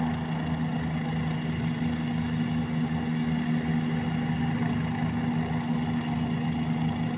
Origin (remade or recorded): recorded